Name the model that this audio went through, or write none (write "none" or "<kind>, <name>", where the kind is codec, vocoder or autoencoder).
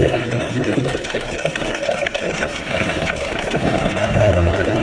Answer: codec, SNAC